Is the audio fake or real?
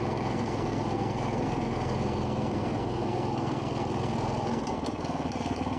fake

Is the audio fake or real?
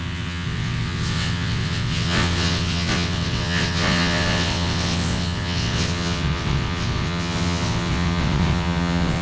fake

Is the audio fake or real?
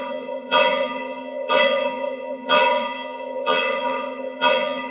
fake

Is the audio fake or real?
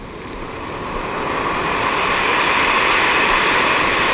real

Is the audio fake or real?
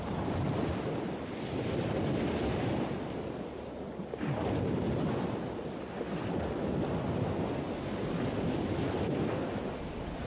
real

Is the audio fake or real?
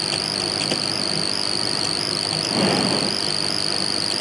real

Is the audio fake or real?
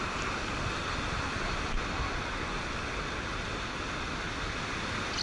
real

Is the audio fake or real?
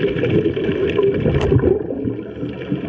real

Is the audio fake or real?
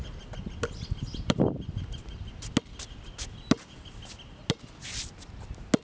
real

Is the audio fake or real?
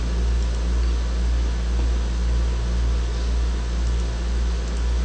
real